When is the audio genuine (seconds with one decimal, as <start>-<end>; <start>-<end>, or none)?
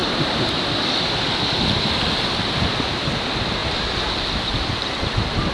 0.6-5.5